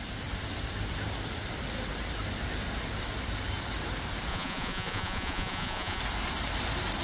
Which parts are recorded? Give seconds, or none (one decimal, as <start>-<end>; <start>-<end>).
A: 0.0-4.3; 6.0-7.0